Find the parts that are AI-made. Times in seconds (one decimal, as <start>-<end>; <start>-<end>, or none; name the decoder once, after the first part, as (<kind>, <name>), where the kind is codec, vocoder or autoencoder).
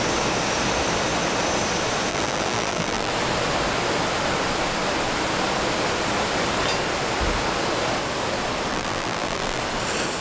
2.1-3.1 (vocoder, BigVGAN v2); 8.7-9.6